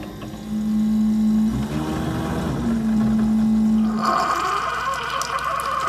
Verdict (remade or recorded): recorded